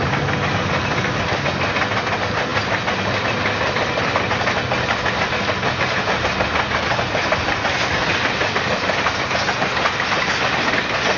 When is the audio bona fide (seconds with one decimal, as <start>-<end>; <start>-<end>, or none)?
0.0-11.2